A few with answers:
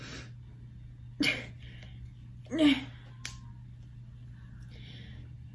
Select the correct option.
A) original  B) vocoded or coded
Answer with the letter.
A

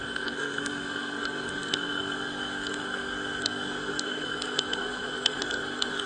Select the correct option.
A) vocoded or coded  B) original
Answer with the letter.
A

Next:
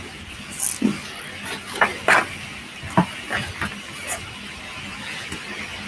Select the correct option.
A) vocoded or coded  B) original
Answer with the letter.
B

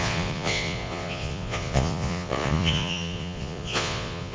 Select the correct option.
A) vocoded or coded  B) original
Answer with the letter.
A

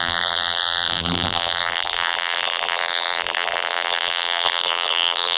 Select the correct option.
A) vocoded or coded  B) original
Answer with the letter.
A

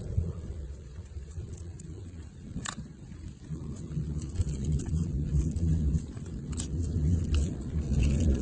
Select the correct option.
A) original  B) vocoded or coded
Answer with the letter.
B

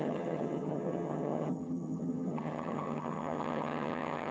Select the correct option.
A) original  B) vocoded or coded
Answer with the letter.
B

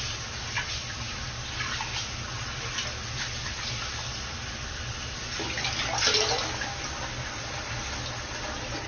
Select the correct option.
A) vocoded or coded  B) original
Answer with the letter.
B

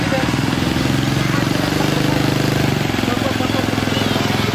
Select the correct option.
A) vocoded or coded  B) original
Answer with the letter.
B